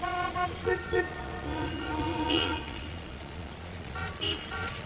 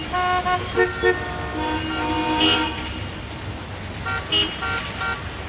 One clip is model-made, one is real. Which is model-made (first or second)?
first